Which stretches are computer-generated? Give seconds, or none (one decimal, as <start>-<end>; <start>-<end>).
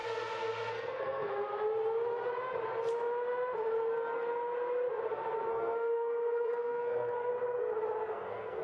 0.7-1.5; 5.5-7.3; 8.1-8.6